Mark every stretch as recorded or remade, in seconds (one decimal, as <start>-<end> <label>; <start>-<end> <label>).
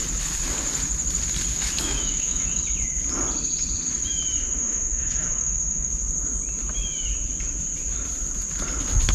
0.0-1.5 recorded; 1.5-2.6 remade; 2.6-4.4 recorded; 4.4-5.9 remade; 5.9-9.1 recorded